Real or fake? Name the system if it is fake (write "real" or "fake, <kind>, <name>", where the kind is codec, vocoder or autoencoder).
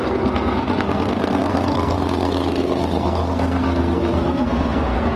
fake, codec, SNAC